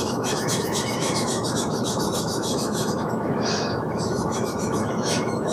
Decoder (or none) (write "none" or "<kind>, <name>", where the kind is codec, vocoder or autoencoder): autoencoder, DAC-VAE